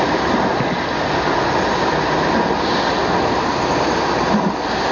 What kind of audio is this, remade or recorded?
recorded